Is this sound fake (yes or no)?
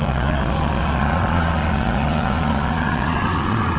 yes